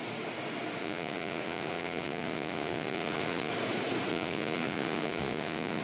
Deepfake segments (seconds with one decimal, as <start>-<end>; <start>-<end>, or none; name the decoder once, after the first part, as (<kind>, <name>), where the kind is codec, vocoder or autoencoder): 0.8-3.5 (vocoder, Vocos); 4.1-5.8